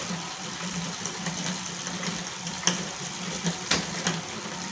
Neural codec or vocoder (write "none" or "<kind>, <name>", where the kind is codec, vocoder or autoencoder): none